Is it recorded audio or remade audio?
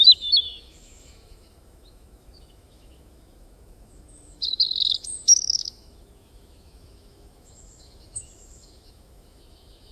remade